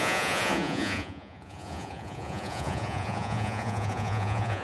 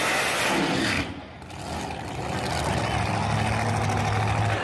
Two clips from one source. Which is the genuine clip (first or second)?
second